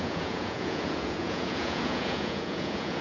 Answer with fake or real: fake